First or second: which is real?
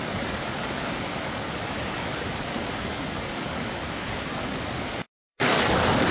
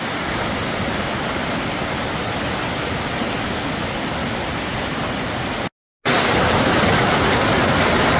second